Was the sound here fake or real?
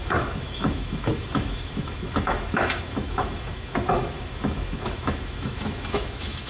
fake